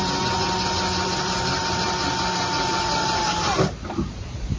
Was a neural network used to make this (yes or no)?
no